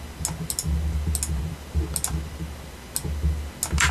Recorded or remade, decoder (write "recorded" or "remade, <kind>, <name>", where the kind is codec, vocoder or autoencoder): recorded